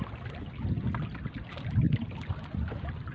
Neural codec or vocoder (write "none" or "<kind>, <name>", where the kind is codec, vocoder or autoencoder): none